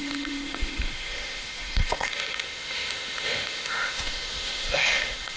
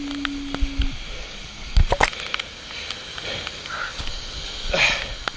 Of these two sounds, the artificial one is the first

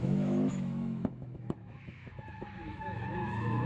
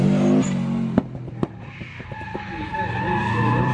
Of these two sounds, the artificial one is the first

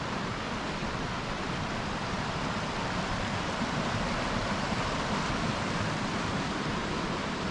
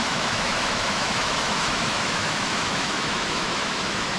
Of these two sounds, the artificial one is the second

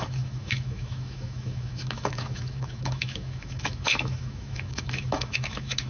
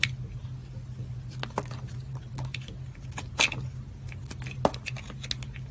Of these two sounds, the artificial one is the first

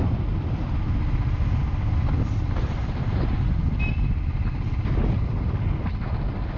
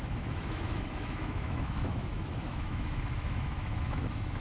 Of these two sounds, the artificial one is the second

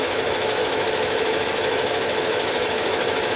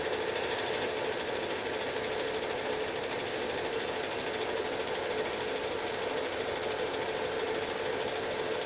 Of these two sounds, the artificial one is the first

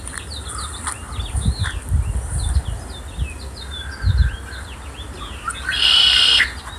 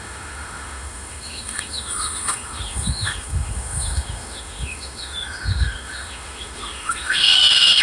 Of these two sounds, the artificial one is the second